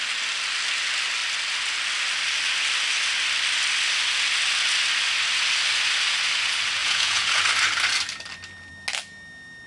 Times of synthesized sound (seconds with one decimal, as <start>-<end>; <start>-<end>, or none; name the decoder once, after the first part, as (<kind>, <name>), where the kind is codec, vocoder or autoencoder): 6.8-7.4 (vocoder, Vocos)